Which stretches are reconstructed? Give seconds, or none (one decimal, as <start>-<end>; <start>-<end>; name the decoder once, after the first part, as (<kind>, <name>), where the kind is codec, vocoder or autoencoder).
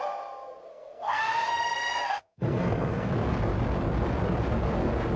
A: 0.7-3.1 (codec, SNAC)